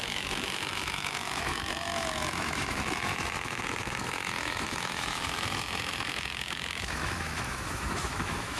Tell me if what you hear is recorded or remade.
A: remade